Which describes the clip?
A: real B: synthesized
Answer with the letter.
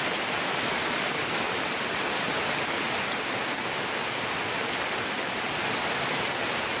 A